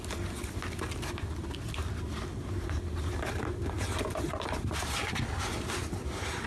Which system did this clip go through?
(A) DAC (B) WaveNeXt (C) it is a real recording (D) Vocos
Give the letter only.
C